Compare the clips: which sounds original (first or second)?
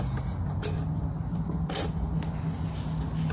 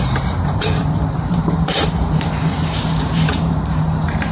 first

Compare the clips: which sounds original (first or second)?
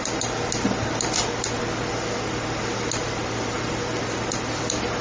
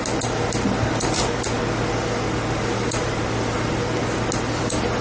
second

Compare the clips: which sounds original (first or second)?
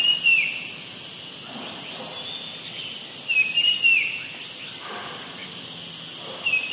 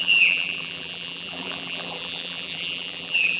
first